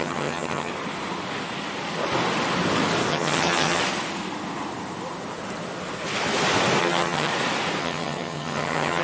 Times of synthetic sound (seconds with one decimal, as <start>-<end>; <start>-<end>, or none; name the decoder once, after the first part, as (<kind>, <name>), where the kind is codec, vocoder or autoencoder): 0.0-0.7 (vocoder, HiFi-GAN); 3.1-3.8; 6.8-7.3; 7.8-9.0